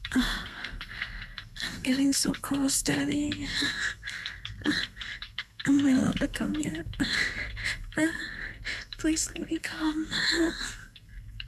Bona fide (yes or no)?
no